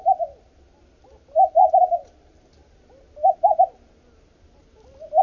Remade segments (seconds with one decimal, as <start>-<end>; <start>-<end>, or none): none